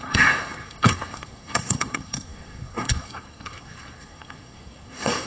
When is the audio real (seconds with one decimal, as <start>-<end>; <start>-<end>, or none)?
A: none